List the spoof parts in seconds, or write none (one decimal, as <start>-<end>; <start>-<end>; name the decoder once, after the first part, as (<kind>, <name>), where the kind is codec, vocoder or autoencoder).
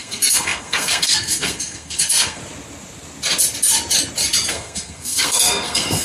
0.0-2.4 (codec, SNAC); 4.5-6.0